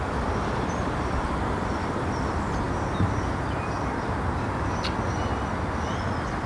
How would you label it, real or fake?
real